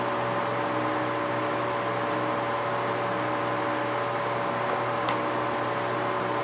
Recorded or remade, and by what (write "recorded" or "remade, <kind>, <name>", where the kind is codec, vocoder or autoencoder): recorded